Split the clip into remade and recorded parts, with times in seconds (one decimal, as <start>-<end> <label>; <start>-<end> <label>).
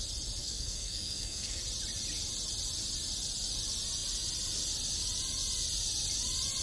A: 0.0-0.4 recorded; 0.4-1.6 remade; 1.6-6.6 recorded